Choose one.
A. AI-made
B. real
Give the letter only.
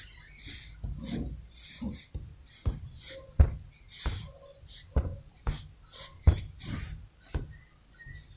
B